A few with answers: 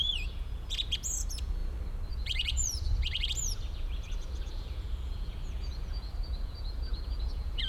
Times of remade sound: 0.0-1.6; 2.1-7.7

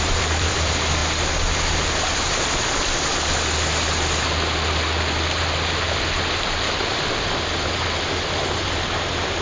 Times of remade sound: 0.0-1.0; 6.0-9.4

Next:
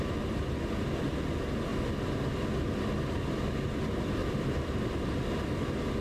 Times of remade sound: 4.2-5.5

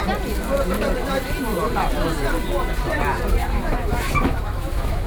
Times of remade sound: 3.4-5.1